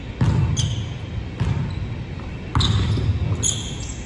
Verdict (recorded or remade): recorded